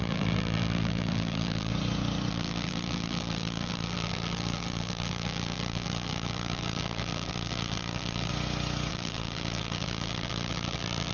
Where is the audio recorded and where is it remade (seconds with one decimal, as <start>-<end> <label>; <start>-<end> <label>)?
0.0-1.7 remade; 1.7-2.3 recorded; 2.3-8.3 remade; 8.3-8.9 recorded; 8.9-11.1 remade